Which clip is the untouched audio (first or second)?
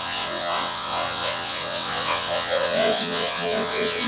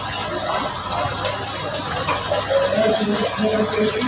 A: second